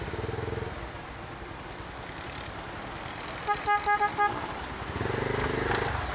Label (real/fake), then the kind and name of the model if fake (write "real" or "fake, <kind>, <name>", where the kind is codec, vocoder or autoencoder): real